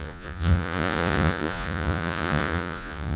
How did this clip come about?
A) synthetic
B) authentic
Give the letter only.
A